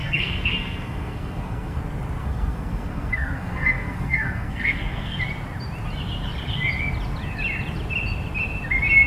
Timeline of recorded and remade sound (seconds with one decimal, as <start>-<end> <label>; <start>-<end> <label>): 0.0-1.8 remade; 1.8-2.2 recorded; 2.2-5.2 remade; 5.2-9.1 recorded

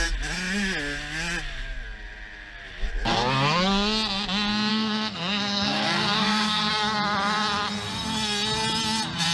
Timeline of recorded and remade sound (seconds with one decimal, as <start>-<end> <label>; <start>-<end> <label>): 0.0-4.7 recorded; 4.7-6.7 remade; 6.7-9.3 recorded

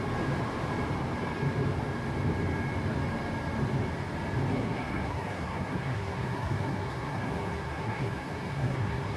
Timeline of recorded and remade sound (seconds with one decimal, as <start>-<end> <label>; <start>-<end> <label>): 0.0-4.5 recorded; 4.5-9.2 remade

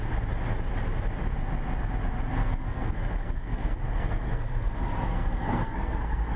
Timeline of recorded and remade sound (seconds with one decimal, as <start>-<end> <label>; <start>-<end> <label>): 0.0-2.4 recorded; 2.4-6.4 remade

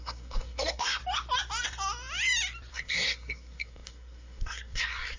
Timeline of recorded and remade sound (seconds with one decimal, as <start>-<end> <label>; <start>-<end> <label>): 0.0-1.0 remade; 1.0-2.7 recorded; 2.7-5.2 remade

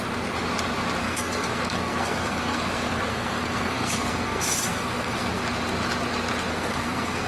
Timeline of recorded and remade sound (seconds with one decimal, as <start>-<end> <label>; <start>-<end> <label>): 0.0-1.0 recorded; 1.0-5.4 remade; 5.4-6.5 recorded; 6.5-7.3 remade

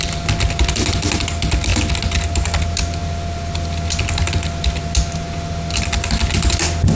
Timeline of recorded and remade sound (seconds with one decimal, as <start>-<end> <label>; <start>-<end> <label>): 0.0-6.9 recorded

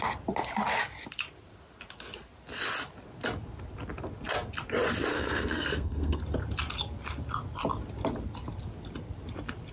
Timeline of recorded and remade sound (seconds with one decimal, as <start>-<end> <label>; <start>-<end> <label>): 0.0-5.1 recorded; 5.1-6.2 remade; 6.2-9.7 recorded